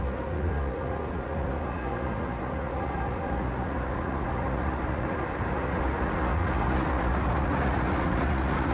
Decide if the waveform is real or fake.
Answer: fake